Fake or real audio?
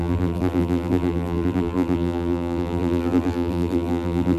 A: fake